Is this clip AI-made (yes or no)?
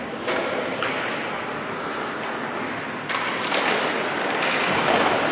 no